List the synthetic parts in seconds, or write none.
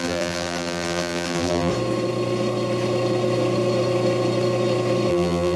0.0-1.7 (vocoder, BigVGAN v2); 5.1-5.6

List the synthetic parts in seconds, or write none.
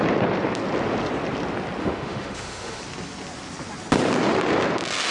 1.8-2.8 (autoencoder, DAC-VAE)